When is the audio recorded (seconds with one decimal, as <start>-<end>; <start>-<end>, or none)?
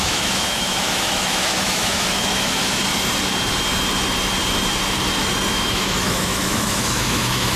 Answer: 2.8-5.5